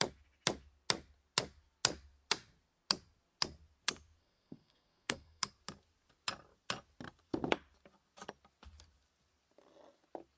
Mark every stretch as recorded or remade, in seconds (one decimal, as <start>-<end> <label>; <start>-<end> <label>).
0.0-4.2 recorded; 4.2-5.5 remade; 5.5-10.4 recorded